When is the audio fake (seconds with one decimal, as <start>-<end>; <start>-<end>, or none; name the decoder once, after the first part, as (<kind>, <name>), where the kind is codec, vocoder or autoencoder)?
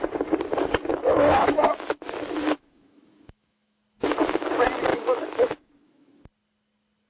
0.9-3.8 (autoencoder, DAC-VAE); 4.9-6.2